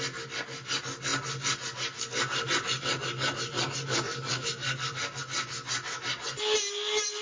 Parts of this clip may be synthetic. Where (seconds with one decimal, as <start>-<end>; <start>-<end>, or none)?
none